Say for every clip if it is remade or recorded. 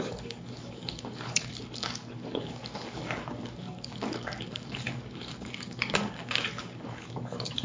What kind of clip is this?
remade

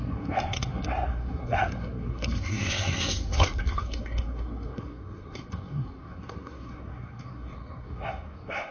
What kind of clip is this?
remade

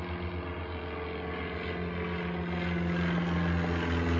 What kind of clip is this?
recorded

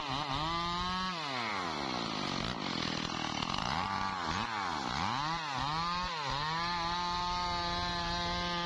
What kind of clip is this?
recorded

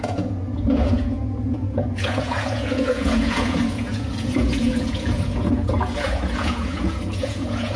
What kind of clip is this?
remade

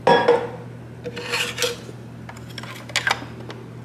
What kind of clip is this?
recorded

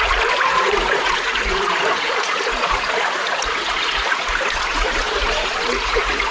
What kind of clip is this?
remade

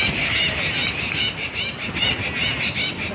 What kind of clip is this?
recorded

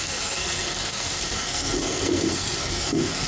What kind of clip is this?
remade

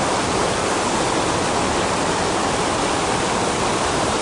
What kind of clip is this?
recorded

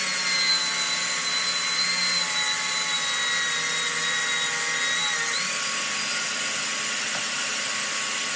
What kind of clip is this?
recorded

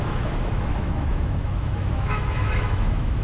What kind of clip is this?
remade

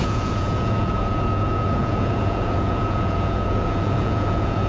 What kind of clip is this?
remade